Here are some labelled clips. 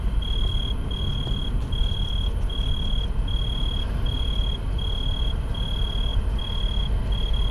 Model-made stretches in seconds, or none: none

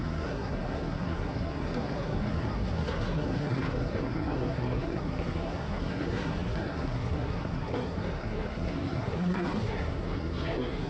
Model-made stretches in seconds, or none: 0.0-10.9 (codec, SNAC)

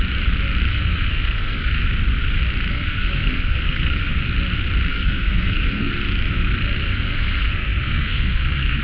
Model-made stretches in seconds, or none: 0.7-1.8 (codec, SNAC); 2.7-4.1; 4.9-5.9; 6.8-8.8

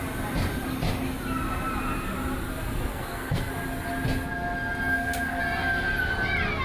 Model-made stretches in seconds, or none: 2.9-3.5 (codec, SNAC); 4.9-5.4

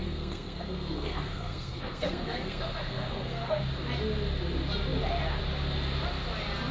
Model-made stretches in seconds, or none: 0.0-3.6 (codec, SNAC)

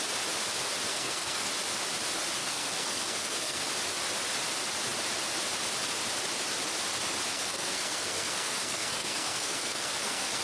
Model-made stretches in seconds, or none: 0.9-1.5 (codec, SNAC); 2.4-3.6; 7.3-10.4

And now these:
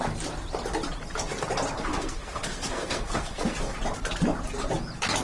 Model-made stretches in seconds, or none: 1.9-3.7 (codec, SNAC)